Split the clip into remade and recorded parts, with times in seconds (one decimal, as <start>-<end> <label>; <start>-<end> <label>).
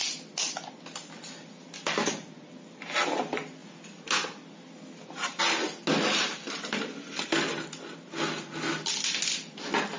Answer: 0.0-10.0 recorded